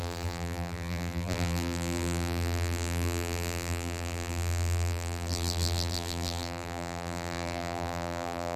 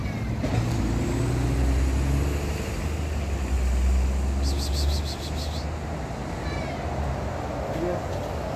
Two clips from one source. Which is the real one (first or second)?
second